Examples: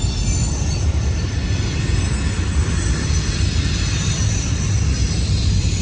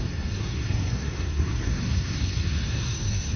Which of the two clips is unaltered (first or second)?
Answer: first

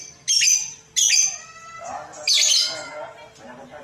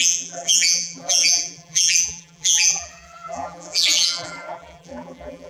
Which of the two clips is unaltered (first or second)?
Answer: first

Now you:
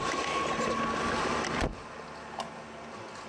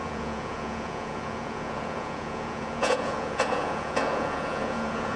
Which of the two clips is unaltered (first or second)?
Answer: first